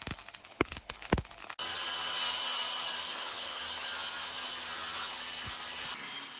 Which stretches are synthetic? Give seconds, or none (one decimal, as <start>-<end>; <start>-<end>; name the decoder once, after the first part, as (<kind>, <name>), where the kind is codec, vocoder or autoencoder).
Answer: 0.4-1.1 (codec, HILCodec); 3.1-3.6